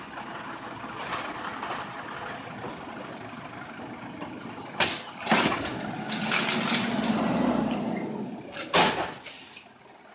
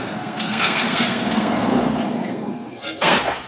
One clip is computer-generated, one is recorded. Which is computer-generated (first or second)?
second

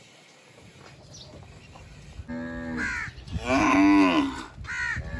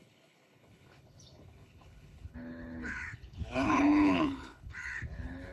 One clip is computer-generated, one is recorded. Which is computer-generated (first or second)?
second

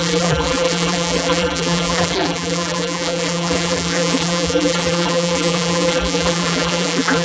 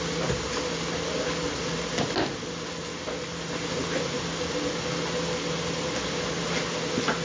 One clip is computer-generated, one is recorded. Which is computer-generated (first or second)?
first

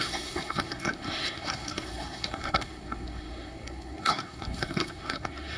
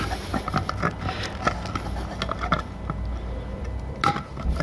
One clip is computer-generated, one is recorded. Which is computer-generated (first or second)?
first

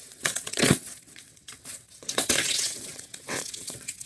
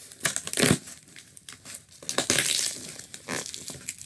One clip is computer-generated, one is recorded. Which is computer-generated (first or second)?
first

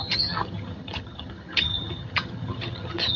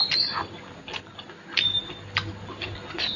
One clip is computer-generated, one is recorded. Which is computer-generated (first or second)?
first